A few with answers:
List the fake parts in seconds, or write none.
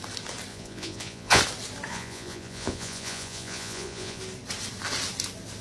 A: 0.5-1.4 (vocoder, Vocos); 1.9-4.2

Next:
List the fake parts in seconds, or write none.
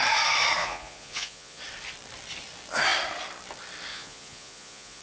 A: 0.6-1.6 (vocoder, Vocos); 3.9-5.0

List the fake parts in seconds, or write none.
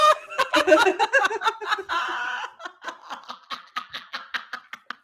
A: 0.0-0.9 (vocoder, BigVGAN v2); 3.3-4.2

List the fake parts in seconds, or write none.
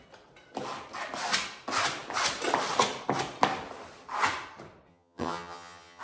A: 4.9-6.0 (vocoder, HiFi-GAN)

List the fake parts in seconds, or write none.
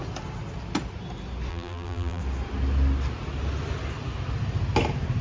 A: 1.5-2.2 (vocoder, BigVGAN v2)